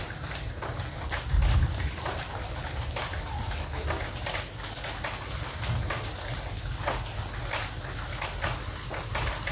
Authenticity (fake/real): real